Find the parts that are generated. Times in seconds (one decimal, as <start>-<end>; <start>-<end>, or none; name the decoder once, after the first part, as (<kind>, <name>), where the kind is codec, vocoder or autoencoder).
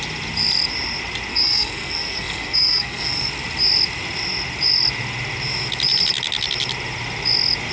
1.3-3.3 (codec, SNAC)